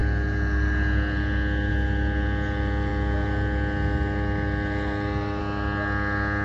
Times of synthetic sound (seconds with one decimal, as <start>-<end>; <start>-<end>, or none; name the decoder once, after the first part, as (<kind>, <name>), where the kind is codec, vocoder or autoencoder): none